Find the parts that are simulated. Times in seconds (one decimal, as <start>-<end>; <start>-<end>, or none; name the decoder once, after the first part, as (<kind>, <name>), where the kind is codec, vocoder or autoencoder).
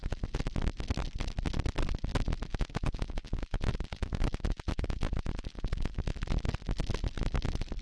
0.6-2.1 (vocoder, BigVGAN v2); 3.1-4.0; 4.7-6.1; 7.2-7.8